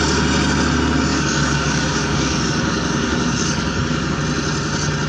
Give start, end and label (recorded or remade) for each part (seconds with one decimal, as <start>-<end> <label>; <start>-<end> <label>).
0.0-1.1 recorded; 1.1-4.2 remade; 4.2-5.1 recorded